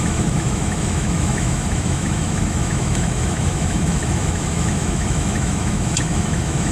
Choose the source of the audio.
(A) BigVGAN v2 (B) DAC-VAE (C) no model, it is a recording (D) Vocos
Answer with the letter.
B